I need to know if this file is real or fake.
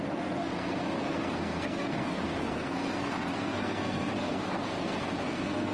fake